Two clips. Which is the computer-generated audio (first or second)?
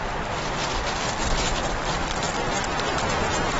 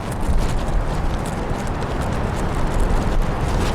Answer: first